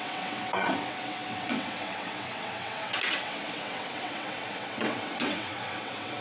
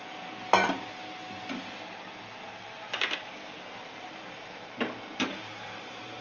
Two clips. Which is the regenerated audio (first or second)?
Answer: first